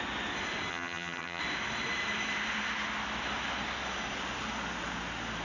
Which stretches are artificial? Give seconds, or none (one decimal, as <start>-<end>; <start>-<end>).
0.7-1.4